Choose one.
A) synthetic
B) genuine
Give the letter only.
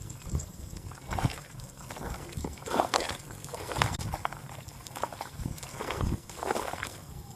A